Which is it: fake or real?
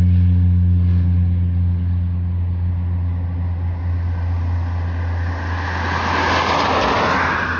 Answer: real